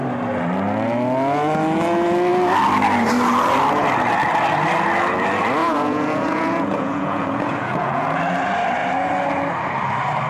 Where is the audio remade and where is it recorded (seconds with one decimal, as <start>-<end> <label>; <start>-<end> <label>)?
0.0-5.6 recorded; 5.6-8.2 remade; 8.2-10.3 recorded